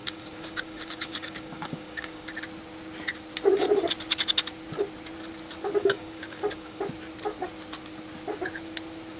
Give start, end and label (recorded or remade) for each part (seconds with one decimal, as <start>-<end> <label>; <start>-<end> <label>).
0.0-2.3 remade; 2.3-5.8 recorded; 5.8-6.8 remade; 6.8-9.2 recorded